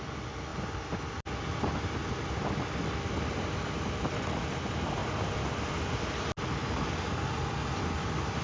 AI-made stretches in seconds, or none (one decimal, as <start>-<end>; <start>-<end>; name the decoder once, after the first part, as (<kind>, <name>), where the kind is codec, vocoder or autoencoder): none